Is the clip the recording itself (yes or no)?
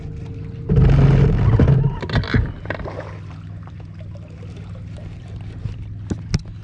yes